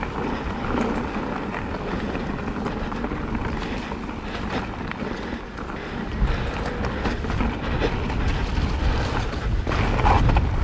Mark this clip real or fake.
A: real